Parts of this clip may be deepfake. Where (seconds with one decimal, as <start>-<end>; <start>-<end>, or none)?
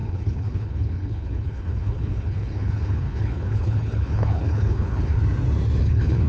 0.0-5.2; 5.8-6.3